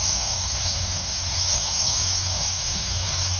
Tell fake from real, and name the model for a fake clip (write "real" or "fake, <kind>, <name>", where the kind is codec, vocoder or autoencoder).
fake, codec, DAC